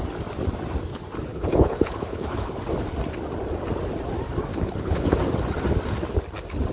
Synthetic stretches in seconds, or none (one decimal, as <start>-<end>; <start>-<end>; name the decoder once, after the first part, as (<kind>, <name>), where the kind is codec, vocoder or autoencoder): 1.3-2.6 (codec, HILCodec); 4.5-5.2